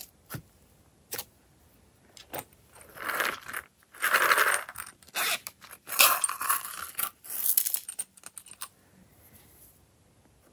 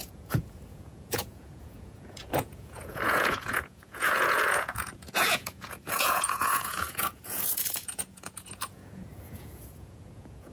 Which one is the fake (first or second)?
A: second